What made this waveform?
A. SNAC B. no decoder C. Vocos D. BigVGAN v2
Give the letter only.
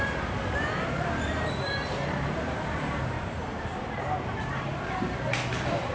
D